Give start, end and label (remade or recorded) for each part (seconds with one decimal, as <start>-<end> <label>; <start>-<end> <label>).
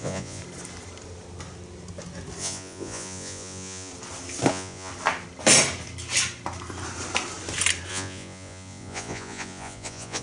0.0-0.4 remade; 0.4-2.4 recorded; 2.4-3.9 remade; 3.9-4.5 recorded; 4.5-4.9 remade; 4.9-7.9 recorded; 7.9-10.2 remade